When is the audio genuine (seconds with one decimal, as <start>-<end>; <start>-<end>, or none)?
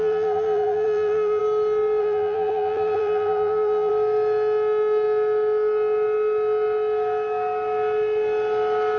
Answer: 1.4-2.0; 3.9-9.0